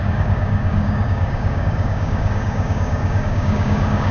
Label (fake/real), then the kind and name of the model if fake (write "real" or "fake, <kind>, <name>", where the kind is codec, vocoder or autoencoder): fake, codec, DAC